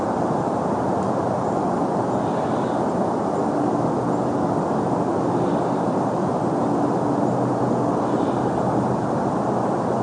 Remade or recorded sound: recorded